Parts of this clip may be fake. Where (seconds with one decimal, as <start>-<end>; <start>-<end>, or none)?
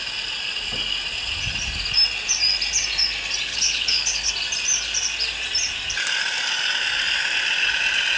3.5-4.3